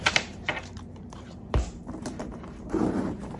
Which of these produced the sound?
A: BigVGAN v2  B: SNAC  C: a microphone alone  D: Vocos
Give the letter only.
A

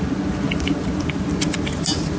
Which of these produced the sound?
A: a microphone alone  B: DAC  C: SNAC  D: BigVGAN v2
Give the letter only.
A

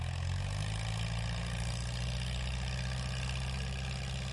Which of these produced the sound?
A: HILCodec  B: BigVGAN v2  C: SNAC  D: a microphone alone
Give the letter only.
B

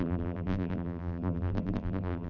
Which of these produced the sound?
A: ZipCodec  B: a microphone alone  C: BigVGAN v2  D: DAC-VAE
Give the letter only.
C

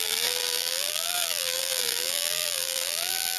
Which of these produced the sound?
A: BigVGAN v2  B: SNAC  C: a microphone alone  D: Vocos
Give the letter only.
A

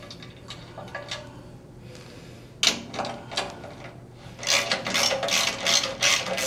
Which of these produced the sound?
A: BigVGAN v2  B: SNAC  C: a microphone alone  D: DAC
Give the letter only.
C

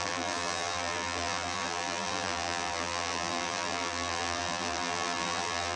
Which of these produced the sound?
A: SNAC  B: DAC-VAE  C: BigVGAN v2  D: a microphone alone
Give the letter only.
C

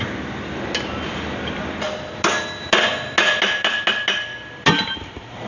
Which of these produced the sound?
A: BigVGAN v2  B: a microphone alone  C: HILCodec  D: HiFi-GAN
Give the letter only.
B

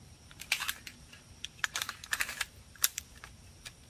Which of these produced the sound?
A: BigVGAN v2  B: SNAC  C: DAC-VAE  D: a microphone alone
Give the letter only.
A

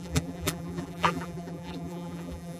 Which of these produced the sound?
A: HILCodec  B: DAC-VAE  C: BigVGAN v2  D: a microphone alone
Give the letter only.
C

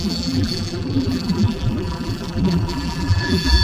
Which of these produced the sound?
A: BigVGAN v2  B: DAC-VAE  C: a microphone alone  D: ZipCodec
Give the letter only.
A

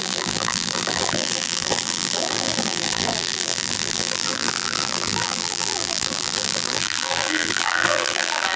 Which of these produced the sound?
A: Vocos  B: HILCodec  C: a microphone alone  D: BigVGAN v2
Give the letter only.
D